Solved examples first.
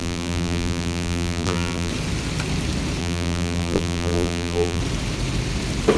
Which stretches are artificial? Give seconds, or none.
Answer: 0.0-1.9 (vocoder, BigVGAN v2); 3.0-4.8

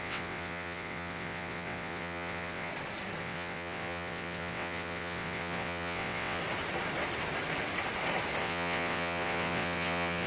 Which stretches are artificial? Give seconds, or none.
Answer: 0.0-2.7 (vocoder, WaveNeXt); 3.2-6.4; 8.4-10.3

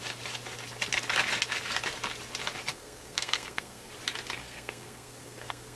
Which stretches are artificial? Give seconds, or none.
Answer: 2.7-3.9 (codec, SNAC); 4.4-5.8